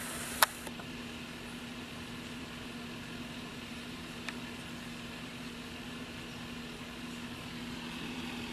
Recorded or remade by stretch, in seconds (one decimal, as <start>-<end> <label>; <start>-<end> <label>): 0.0-3.5 recorded; 3.5-4.0 remade; 4.0-8.5 recorded